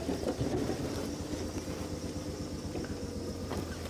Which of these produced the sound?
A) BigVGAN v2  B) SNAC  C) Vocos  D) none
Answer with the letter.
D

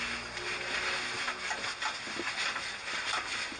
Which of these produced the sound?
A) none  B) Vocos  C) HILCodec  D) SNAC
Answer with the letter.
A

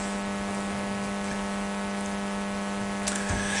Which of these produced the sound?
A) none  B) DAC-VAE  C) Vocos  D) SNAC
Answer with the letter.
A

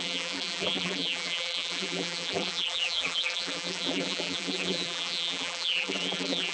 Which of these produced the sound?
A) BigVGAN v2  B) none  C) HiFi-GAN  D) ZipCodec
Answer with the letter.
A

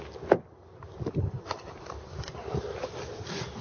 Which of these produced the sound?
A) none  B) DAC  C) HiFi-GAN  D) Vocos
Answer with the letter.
A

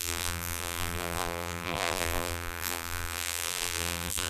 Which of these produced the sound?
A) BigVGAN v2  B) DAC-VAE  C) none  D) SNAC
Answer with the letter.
A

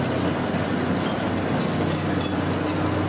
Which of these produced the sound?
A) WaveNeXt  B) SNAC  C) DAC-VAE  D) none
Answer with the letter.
D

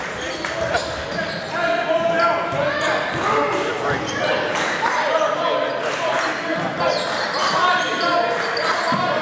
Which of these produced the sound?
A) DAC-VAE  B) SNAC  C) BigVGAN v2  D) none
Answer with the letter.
D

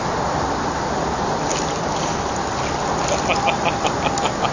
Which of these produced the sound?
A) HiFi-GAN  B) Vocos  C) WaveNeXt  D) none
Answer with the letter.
D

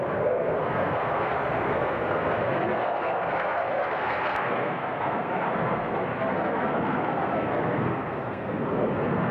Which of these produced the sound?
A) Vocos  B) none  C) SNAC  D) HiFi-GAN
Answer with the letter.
C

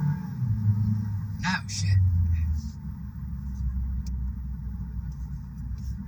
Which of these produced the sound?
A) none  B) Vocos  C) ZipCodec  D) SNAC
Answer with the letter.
A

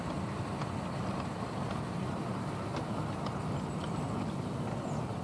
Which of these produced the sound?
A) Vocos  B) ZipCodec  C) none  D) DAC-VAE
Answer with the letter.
C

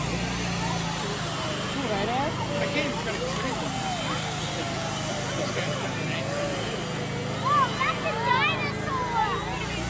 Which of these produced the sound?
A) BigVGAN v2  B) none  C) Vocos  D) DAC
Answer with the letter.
B